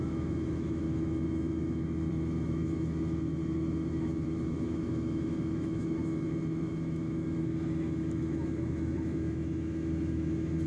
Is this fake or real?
fake